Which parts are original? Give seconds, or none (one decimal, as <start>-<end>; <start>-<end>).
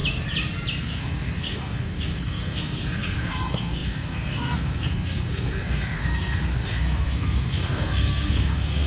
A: 0.0-0.8